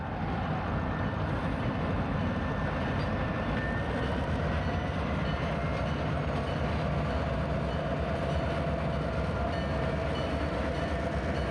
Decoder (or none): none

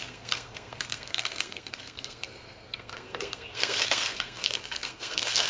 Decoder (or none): codec, SNAC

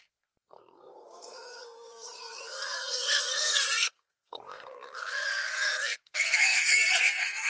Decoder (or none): codec, SNAC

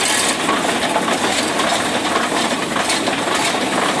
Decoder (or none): none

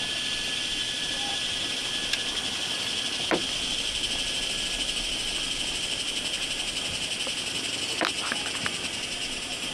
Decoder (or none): none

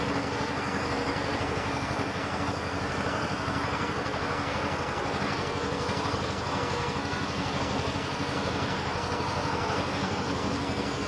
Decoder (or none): codec, SNAC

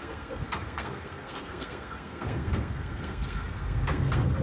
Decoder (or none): codec, SNAC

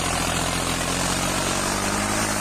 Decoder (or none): none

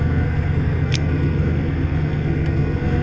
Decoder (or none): codec, SNAC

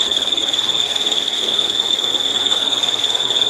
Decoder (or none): codec, SNAC